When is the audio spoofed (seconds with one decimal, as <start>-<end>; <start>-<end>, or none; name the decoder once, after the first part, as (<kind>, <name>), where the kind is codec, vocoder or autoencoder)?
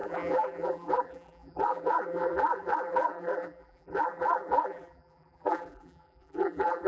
0.0-6.9 (vocoder, BigVGAN v2)